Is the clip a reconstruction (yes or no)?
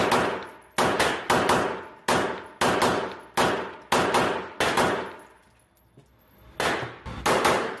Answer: no